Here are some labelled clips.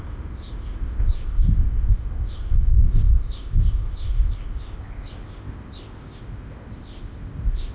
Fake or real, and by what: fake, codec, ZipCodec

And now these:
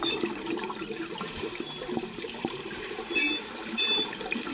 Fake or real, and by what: real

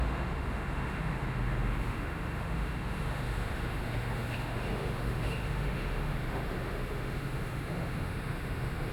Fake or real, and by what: fake, autoencoder, DAC-VAE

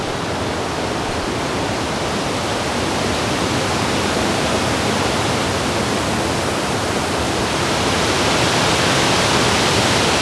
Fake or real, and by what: fake, vocoder, BigVGAN v2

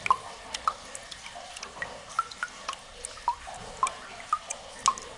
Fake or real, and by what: real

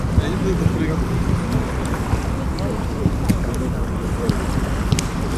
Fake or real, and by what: real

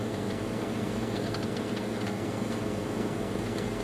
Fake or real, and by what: fake, codec, SNAC